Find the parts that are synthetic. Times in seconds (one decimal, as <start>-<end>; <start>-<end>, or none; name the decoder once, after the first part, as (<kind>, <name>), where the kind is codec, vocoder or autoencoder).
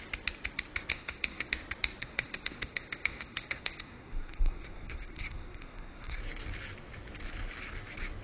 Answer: 0.9-1.5 (codec, SNAC); 2.0-6.2